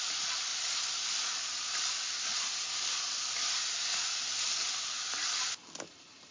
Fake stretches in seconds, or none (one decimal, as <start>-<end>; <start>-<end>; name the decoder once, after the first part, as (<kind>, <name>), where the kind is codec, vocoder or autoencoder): none